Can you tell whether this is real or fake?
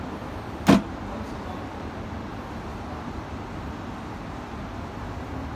real